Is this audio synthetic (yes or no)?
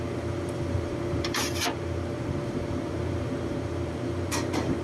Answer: yes